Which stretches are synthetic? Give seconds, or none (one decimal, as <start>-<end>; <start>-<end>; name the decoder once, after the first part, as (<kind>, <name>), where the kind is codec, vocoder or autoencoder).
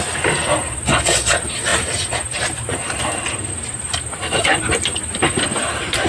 1.7-3.5 (vocoder, BigVGAN v2)